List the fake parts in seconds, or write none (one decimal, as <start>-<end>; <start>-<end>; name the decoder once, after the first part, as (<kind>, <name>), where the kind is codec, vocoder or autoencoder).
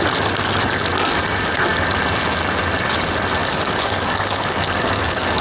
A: 3.4-5.4 (codec, DAC)